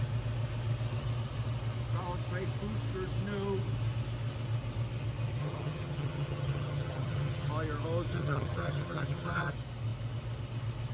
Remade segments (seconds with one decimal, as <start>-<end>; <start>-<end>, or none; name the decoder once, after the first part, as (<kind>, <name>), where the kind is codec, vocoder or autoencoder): 5.4-7.5 (vocoder, HiFi-GAN); 8.1-9.5